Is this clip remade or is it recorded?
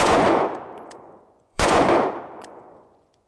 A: remade